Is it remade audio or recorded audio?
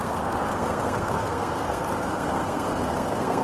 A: remade